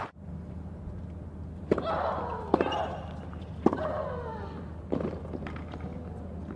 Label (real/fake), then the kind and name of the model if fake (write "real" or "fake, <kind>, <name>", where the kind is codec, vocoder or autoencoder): real